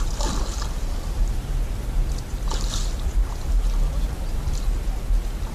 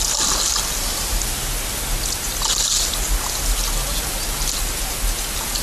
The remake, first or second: first